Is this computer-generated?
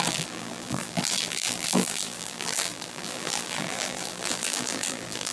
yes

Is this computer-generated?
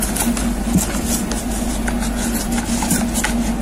no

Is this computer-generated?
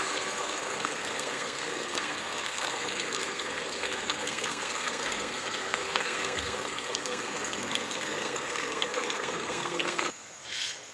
yes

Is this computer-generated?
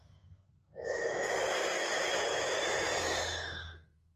yes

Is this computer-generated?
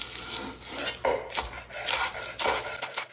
no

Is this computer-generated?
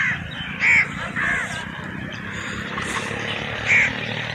no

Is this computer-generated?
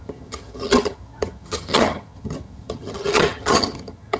yes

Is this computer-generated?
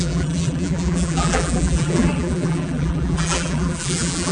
yes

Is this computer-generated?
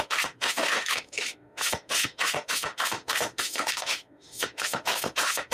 yes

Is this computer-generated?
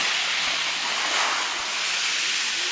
no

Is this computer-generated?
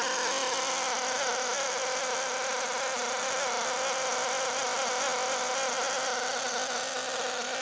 no